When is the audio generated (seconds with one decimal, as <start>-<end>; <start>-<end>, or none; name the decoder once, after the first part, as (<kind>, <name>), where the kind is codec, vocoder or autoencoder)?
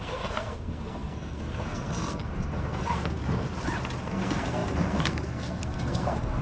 0.0-3.2 (codec, SNAC); 4.0-6.4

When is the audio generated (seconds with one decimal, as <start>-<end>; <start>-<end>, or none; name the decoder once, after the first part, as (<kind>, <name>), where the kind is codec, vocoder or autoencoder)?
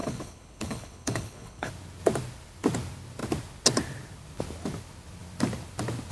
0.0-1.7 (codec, HILCodec)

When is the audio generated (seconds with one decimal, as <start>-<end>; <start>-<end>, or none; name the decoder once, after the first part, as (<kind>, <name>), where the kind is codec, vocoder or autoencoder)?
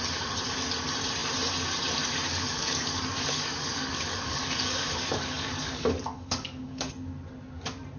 2.3-6.9 (codec, DAC)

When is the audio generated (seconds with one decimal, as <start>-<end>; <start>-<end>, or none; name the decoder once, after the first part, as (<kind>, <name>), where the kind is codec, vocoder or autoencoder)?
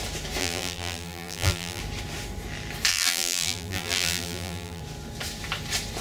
0.4-1.8 (vocoder, BigVGAN v2); 2.9-4.8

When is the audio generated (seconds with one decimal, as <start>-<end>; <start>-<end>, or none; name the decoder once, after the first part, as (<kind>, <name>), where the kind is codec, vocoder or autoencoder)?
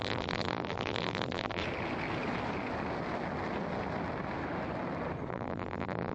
0.0-1.6 (vocoder, BigVGAN v2); 5.3-6.1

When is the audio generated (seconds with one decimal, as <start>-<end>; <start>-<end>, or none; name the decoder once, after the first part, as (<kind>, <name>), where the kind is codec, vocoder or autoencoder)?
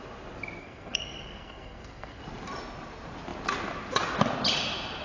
0.6-2.2 (codec, SNAC)